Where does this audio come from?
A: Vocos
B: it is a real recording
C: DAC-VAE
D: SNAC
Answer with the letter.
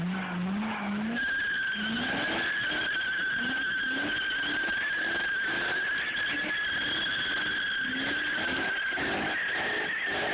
B